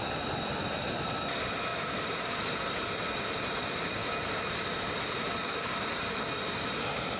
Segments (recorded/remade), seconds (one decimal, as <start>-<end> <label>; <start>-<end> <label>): 0.0-1.7 recorded; 1.7-2.3 remade; 2.3-7.2 recorded